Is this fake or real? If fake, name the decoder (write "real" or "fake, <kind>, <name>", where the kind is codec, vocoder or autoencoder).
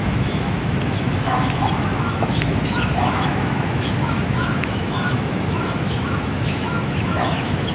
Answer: fake, autoencoder, DAC-VAE